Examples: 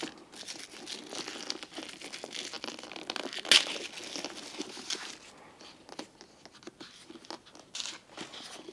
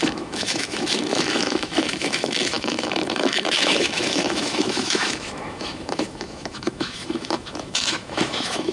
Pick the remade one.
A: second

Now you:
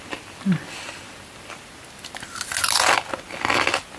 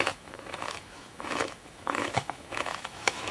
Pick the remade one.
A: second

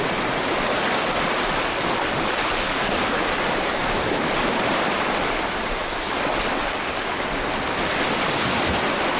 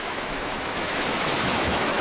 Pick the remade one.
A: second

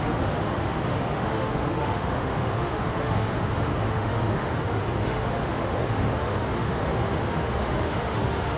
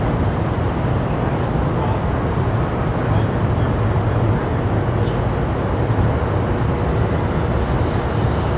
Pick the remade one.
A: first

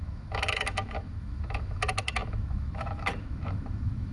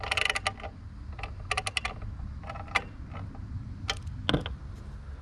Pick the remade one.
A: first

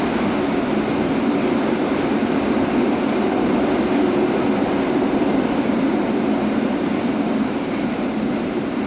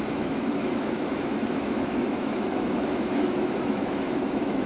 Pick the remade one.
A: second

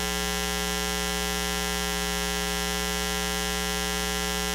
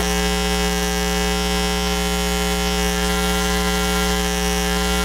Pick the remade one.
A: second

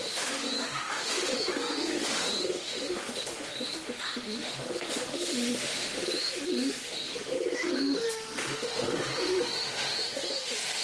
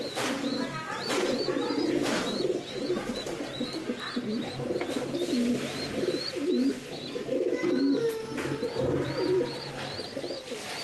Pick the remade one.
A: first